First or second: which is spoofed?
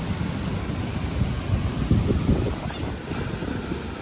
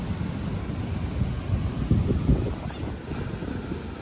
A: first